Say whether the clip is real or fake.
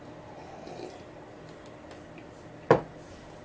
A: real